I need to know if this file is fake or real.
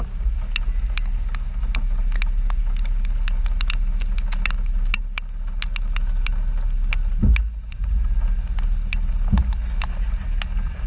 real